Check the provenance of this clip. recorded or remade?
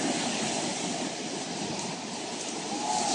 recorded